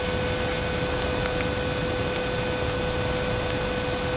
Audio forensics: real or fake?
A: real